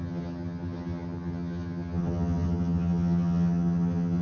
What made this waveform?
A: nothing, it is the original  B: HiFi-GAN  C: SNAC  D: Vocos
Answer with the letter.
B